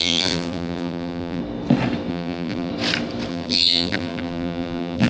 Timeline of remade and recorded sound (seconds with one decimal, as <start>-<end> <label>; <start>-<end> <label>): 0.0-1.4 remade; 1.4-2.1 recorded; 2.1-2.7 remade; 2.7-3.3 recorded; 3.3-5.1 remade